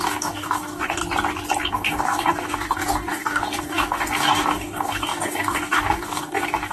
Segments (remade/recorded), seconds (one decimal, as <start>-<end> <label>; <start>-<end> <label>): 0.0-1.0 remade; 1.0-1.7 recorded; 1.7-6.7 remade